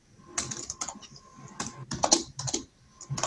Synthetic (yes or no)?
yes